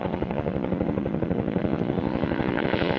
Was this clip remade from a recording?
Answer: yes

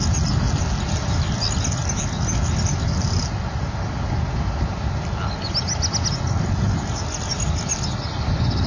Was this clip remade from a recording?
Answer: no